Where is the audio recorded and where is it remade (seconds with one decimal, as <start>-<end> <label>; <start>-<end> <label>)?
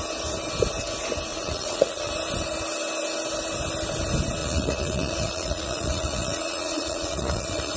0.0-1.3 recorded; 1.3-2.1 remade; 2.1-4.4 recorded; 4.4-7.8 remade